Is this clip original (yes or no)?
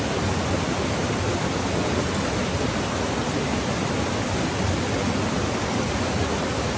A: yes